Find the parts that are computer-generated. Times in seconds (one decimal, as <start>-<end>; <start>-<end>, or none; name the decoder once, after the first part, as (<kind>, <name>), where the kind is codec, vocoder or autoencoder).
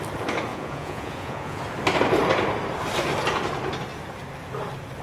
0.5-1.6 (vocoder, Vocos)